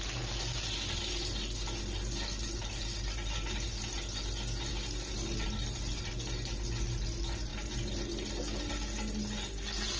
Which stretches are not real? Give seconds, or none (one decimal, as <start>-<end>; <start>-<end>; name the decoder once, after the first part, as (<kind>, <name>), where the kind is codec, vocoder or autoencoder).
none